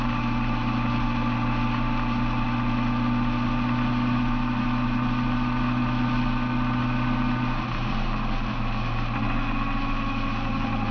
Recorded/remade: recorded